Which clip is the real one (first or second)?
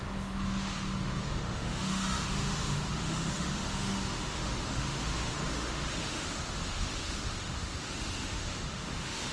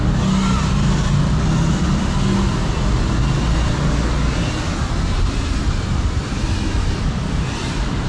second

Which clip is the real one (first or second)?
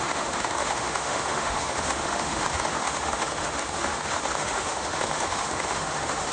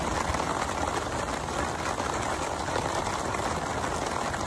second